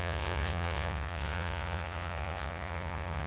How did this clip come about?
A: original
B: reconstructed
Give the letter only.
B